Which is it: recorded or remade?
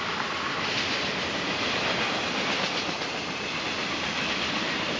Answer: recorded